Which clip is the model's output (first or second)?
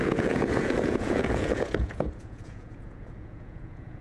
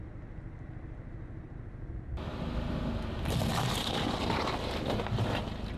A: first